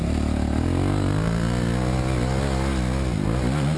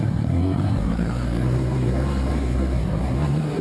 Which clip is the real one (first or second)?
first